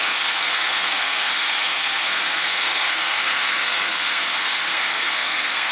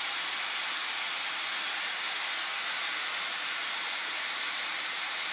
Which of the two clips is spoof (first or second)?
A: first